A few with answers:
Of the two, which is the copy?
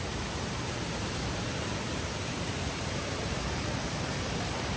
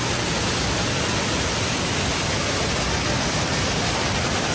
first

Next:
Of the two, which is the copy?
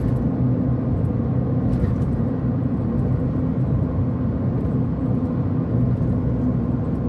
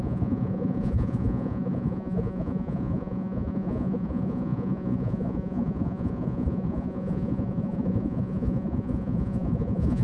second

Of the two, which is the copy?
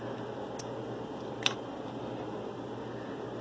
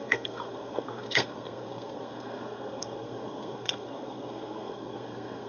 second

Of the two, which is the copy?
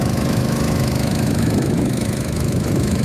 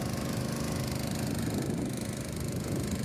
first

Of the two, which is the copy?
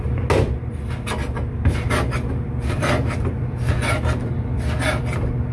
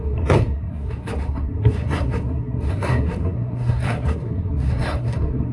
second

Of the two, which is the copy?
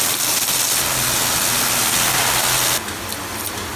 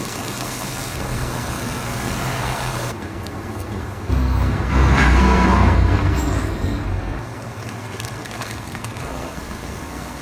second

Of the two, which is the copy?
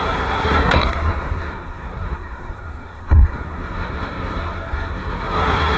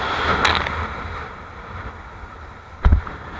first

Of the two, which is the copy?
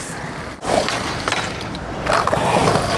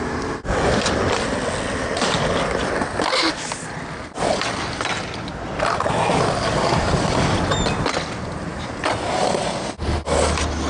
first